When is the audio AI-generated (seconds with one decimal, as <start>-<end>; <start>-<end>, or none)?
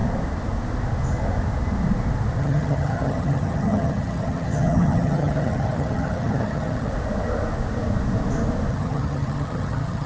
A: 2.4-6.9; 8.7-10.1